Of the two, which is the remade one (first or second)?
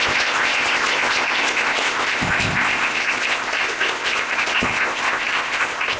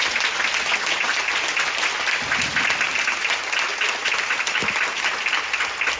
first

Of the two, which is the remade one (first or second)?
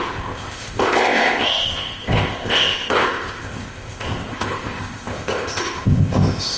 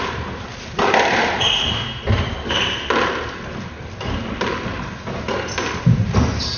first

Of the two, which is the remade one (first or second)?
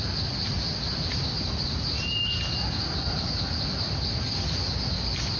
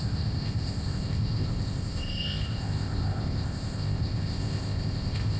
second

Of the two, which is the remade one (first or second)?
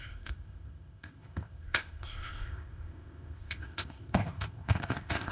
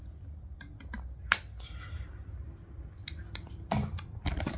first